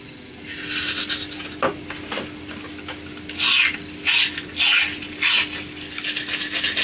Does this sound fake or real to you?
real